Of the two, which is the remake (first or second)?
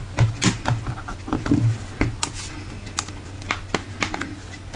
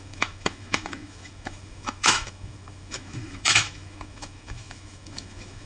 second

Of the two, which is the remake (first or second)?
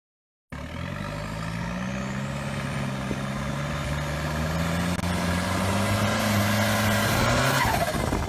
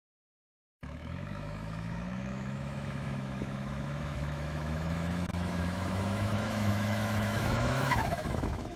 second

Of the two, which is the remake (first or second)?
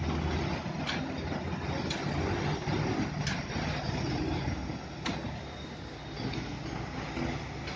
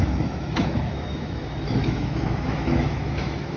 second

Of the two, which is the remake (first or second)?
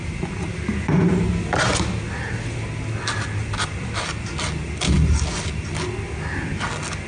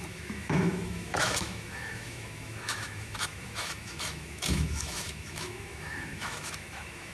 second